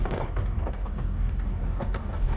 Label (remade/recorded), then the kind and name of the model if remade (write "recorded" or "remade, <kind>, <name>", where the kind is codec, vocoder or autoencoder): remade, codec, DAC